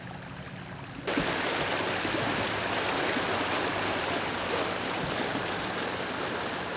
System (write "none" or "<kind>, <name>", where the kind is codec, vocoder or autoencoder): none